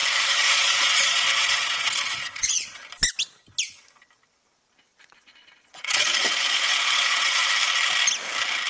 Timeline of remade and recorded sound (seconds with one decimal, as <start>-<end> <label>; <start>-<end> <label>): 0.0-2.8 remade; 2.8-4.9 recorded; 4.9-7.5 remade; 7.5-8.7 recorded